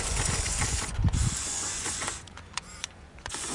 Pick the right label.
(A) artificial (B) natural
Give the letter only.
A